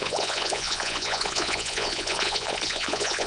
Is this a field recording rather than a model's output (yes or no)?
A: no